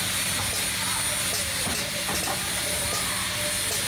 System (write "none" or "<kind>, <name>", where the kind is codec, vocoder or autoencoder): none